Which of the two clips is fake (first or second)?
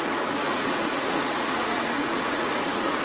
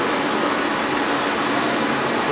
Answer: first